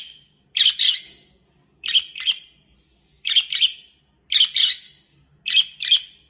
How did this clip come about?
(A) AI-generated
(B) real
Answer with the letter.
B